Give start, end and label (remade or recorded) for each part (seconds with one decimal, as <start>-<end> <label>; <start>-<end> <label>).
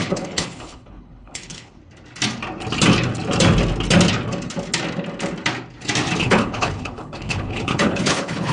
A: 0.0-1.8 remade; 1.8-6.2 recorded; 6.2-8.5 remade